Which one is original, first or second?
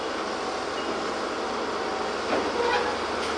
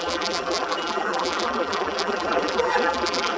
first